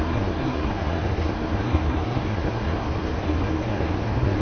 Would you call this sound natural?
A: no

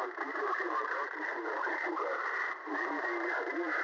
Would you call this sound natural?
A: no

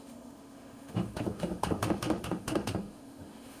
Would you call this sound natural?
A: no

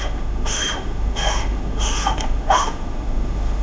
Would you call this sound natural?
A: no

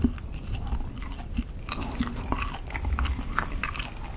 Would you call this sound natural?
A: yes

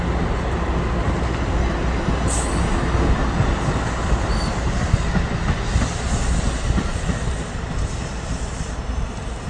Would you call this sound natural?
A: yes